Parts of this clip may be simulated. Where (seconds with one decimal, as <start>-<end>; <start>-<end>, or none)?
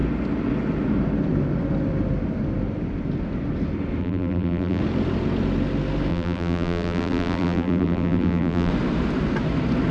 4.0-4.8; 6.1-8.7